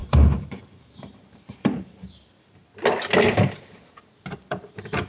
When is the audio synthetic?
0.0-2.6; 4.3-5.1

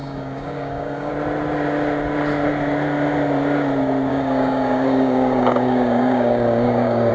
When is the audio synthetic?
0.0-1.1; 4.1-7.1

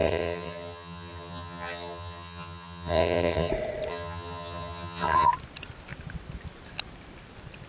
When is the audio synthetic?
0.0-3.5; 3.9-5.3

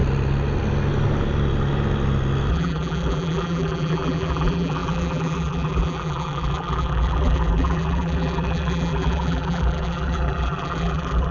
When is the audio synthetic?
2.5-11.3

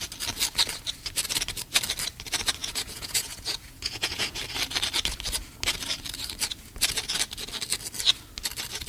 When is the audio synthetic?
2.6-4.4